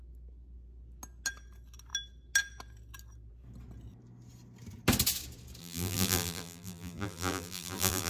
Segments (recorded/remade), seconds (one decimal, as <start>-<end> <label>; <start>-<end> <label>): 0.0-5.6 recorded; 5.6-8.1 remade